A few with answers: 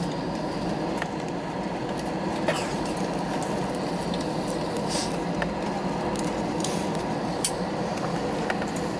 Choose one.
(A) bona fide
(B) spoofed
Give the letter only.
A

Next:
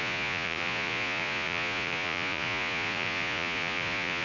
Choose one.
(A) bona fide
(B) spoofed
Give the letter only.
B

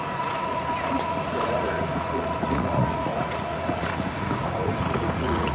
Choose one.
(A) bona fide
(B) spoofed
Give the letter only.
B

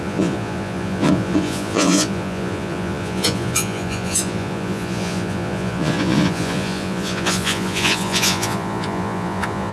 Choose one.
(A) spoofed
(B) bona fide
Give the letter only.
A